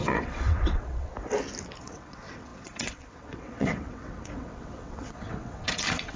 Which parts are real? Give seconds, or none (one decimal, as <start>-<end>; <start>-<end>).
1.1-1.8